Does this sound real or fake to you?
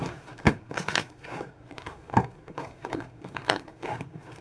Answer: fake